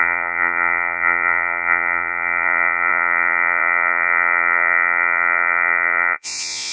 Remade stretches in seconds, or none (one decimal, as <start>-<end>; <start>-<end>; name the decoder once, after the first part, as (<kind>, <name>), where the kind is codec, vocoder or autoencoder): 0.0-6.7 (vocoder, Vocos)